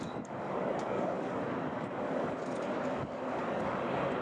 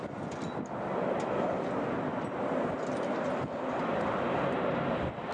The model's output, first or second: first